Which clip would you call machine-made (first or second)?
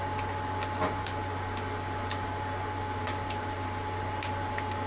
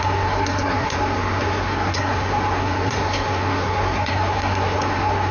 second